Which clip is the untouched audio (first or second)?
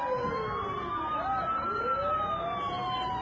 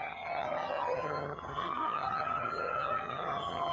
first